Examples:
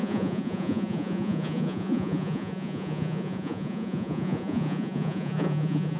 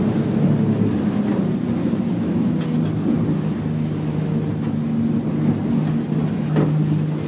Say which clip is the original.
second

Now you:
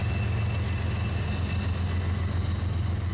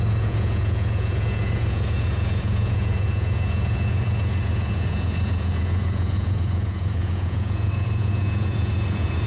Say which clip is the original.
first